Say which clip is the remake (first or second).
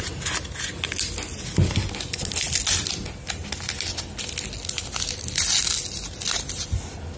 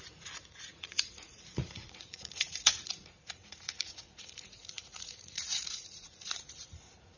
second